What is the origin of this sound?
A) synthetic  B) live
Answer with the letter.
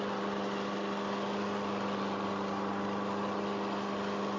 B